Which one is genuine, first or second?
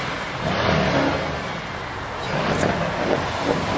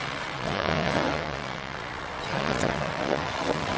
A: first